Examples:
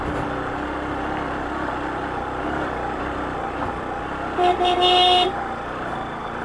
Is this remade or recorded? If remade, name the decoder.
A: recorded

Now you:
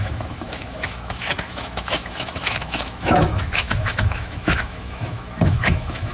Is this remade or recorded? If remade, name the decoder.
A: remade, autoencoder, DAC-VAE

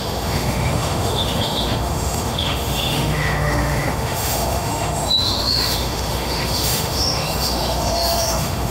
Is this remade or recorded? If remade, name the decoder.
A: remade, autoencoder, DAC-VAE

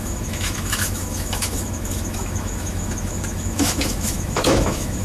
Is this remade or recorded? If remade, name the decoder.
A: remade, autoencoder, DAC-VAE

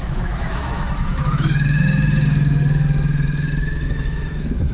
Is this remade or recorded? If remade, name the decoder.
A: remade, autoencoder, DAC-VAE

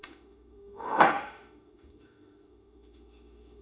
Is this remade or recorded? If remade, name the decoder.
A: remade, autoencoder, DAC-VAE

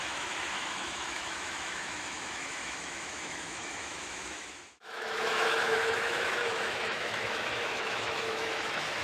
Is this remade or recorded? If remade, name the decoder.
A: remade, autoencoder, DAC-VAE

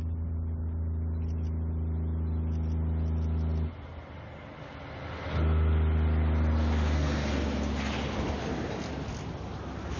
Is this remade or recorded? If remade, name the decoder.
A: recorded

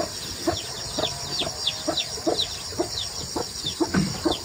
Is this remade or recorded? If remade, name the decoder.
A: recorded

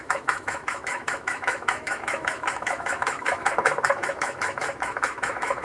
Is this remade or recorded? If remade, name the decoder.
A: remade, autoencoder, DAC-VAE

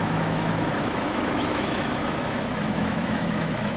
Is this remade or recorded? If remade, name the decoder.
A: remade, autoencoder, DAC-VAE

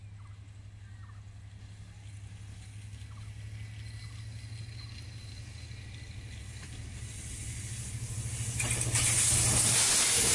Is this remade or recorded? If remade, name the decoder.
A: recorded